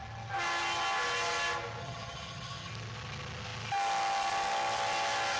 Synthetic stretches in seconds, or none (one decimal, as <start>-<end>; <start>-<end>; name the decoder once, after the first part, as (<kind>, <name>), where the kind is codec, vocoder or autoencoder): 1.8-2.7 (vocoder, HiFi-GAN)